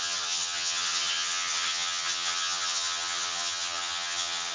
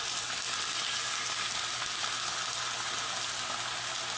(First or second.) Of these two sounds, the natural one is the second